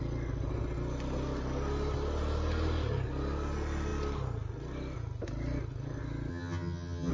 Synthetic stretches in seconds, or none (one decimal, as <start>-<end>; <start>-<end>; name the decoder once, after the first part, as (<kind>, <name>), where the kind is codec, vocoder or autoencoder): 6.3-7.1 (vocoder, HiFi-GAN)